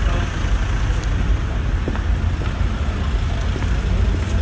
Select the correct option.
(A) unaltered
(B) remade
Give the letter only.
A